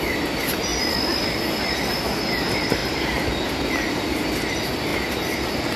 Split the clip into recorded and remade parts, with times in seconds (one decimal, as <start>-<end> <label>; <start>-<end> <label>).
0.0-5.8 recorded

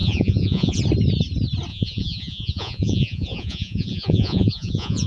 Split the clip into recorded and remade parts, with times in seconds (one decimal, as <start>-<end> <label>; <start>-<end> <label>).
0.0-0.8 remade; 0.8-1.7 recorded; 1.7-5.1 remade

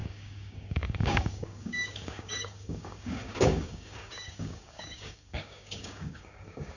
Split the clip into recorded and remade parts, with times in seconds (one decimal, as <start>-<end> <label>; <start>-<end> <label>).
0.0-6.8 remade

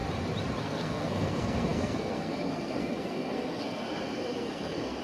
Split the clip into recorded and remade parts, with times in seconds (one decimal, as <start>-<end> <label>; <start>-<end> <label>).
0.0-0.6 recorded; 0.6-5.0 remade

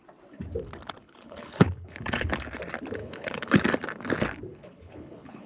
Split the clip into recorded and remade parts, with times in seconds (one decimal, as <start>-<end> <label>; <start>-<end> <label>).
0.0-1.0 recorded; 1.0-2.3 remade; 2.3-3.0 recorded; 3.0-3.6 remade; 3.6-4.5 recorded; 4.5-5.5 remade

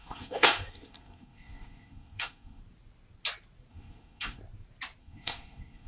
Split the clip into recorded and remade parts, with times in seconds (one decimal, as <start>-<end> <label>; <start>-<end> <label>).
0.0-2.6 remade; 2.6-3.7 recorded; 3.7-4.4 remade; 4.4-5.0 recorded; 5.0-5.9 remade